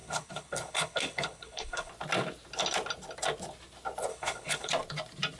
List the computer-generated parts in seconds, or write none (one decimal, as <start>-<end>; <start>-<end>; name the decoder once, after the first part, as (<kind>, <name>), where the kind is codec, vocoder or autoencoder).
0.0-1.9 (codec, HILCodec); 4.1-4.7